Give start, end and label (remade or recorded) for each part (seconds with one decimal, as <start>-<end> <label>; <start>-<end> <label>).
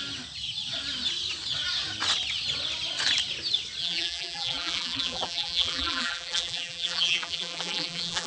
0.0-3.8 recorded; 3.8-8.3 remade